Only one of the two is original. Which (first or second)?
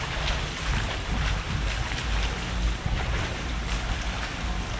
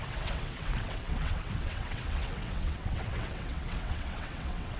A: first